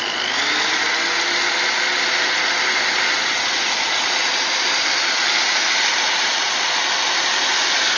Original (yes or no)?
yes